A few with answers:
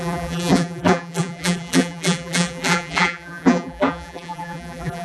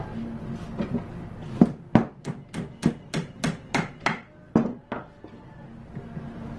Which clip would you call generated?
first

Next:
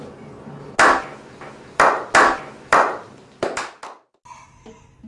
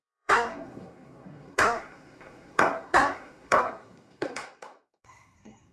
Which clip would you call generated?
second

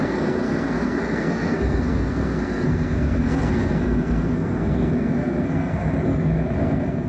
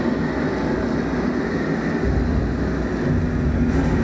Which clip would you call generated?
first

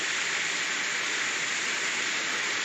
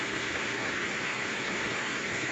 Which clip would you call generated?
second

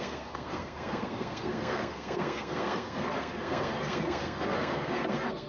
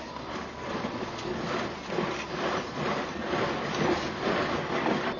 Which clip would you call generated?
first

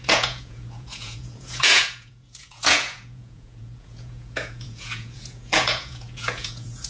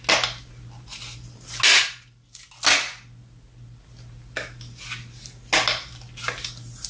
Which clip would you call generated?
first